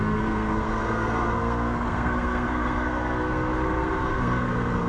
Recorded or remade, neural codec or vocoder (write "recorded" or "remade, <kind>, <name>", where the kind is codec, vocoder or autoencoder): remade, codec, SNAC